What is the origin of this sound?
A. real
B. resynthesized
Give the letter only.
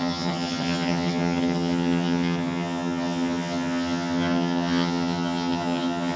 B